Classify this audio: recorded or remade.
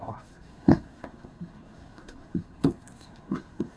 remade